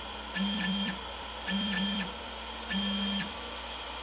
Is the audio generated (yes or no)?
yes